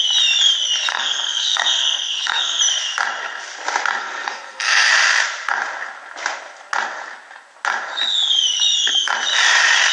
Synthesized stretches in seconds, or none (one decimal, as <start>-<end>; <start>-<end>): 0.9-2.6; 4.0-4.9